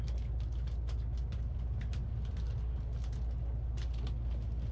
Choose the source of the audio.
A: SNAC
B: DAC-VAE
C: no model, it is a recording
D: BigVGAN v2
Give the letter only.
C